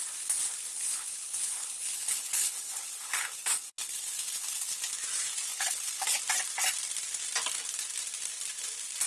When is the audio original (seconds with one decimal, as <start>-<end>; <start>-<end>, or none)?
0.0-0.7; 4.9-5.5; 6.2-9.1